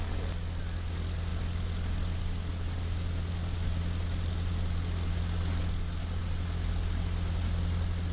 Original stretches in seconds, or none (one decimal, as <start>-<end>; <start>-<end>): 0.0-8.1